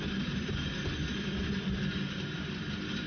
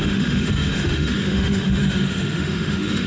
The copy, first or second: second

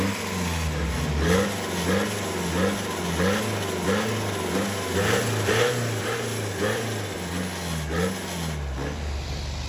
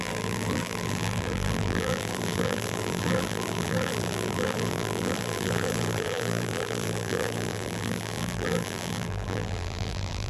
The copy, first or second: second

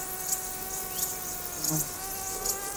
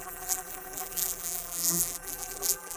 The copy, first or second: second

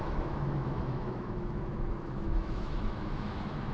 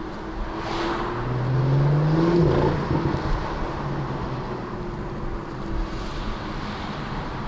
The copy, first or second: first